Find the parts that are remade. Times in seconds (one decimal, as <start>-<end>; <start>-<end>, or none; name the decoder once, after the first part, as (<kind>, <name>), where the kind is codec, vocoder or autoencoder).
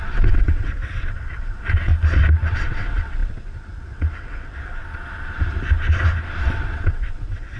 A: 0.0-1.9 (vocoder, WaveNeXt); 2.5-4.8; 6.5-7.6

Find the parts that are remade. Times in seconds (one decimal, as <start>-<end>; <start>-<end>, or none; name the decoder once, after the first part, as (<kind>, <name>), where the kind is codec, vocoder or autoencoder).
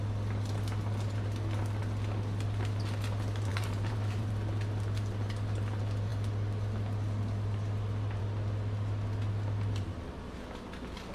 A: 3.5-4.3 (vocoder, BigVGAN v2)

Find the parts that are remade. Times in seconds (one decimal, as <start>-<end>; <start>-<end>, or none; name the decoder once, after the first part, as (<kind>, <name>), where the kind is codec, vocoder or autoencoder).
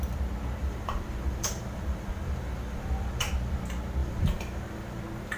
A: 0.6-3.3 (vocoder, BigVGAN v2); 4.0-5.0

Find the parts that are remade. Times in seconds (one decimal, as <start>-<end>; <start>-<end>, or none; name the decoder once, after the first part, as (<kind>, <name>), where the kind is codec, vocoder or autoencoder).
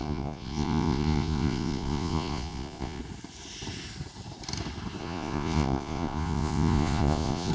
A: 0.0-3.0 (vocoder, Vocos); 5.0-7.5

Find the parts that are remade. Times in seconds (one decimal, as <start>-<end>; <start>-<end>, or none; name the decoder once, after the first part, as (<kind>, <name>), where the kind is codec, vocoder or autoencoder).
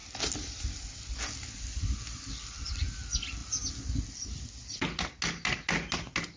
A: none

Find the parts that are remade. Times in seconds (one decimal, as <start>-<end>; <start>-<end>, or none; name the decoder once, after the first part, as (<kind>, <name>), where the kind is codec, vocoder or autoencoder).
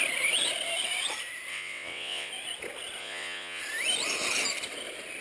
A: 1.5-2.3 (vocoder, WaveNeXt); 3.0-3.6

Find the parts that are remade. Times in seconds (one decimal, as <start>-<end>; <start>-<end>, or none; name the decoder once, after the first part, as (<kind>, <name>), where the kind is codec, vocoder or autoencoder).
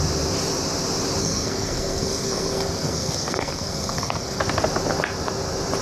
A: 1.2-4.4 (codec, SNAC)